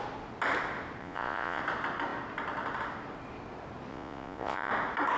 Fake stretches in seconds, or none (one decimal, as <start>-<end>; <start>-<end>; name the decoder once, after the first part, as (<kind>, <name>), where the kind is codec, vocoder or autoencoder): 1.0-1.6 (vocoder, Vocos); 3.9-4.7